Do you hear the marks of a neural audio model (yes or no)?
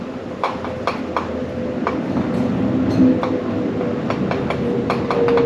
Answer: no